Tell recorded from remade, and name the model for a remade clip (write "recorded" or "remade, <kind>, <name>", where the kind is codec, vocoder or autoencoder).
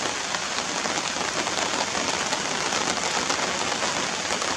recorded